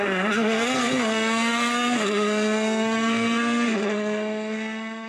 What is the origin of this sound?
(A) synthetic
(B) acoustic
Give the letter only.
A